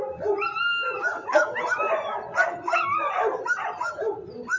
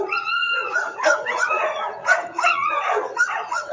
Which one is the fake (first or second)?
second